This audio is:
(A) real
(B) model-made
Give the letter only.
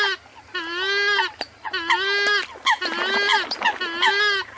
A